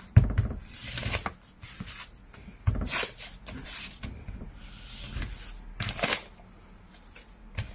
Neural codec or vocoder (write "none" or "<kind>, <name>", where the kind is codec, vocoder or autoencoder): none